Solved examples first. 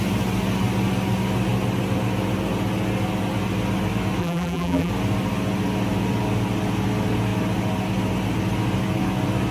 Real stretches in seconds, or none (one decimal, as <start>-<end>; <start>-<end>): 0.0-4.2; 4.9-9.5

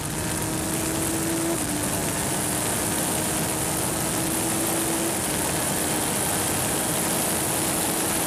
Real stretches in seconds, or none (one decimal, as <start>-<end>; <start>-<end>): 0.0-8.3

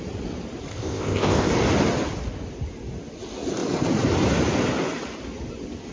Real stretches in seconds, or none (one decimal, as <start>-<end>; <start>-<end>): 0.0-0.7; 1.5-5.9

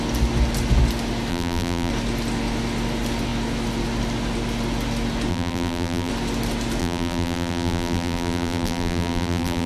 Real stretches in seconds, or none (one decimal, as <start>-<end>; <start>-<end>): 0.0-1.3; 1.9-5.3; 6.1-6.8

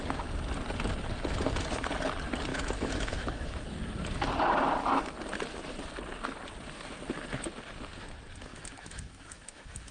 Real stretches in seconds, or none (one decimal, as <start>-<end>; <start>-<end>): 0.0-2.5; 3.6-8.5